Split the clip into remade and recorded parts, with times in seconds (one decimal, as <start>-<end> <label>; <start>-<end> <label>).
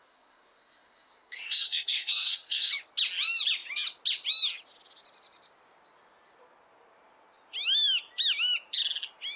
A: 0.0-2.7 remade; 2.7-9.4 recorded